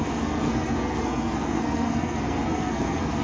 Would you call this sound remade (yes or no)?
yes